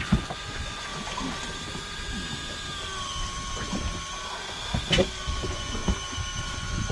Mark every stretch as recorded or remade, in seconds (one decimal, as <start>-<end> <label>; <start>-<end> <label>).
0.0-0.9 remade; 0.9-4.4 recorded; 4.4-5.8 remade; 5.8-6.4 recorded; 6.4-6.9 remade